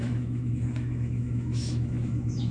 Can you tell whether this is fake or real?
fake